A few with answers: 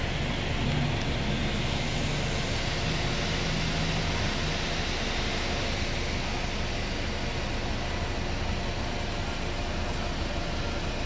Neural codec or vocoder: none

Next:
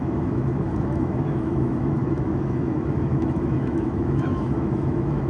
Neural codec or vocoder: autoencoder, DAC-VAE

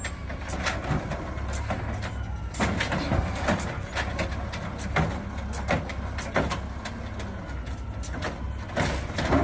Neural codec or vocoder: none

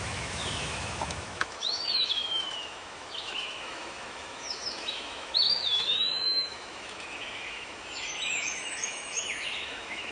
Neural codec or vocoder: autoencoder, DAC-VAE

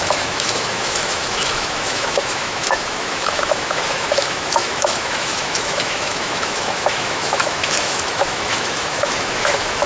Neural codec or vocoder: autoencoder, DAC-VAE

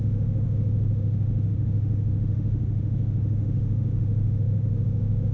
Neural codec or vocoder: autoencoder, DAC-VAE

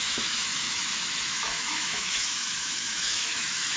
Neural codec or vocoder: autoencoder, DAC-VAE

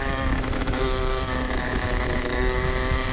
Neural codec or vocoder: autoencoder, DAC-VAE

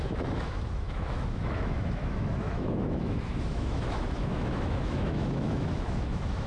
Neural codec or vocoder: autoencoder, DAC-VAE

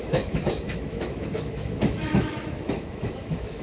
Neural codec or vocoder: autoencoder, DAC-VAE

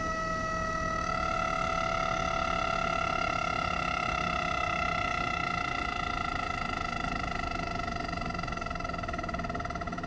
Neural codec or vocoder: autoencoder, DAC-VAE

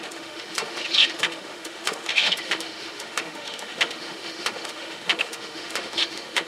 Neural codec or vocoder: autoencoder, DAC-VAE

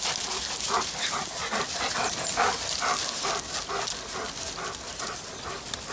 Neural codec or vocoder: none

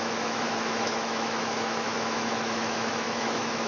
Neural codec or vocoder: autoencoder, DAC-VAE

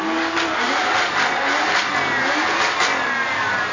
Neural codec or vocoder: none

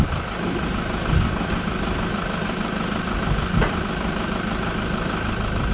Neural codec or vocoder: none